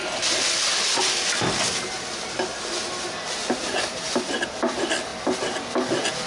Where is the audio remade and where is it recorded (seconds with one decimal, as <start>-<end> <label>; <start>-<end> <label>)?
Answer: 0.0-0.7 remade; 0.7-2.5 recorded; 2.5-4.5 remade; 4.5-6.3 recorded